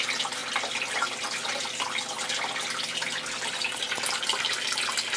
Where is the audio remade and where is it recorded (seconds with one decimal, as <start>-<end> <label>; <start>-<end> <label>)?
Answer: 0.0-5.2 recorded